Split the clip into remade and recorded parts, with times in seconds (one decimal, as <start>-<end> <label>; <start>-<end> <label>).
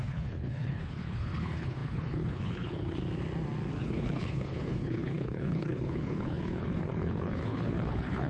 0.0-3.0 remade; 3.0-3.8 recorded; 3.8-8.3 remade